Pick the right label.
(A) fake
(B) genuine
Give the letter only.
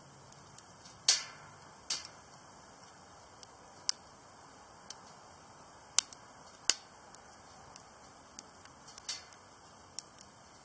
B